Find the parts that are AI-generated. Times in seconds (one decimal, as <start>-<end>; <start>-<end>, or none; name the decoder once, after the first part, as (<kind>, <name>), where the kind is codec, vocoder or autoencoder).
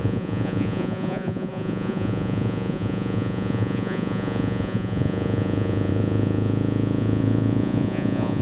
0.0-8.4 (vocoder, Vocos)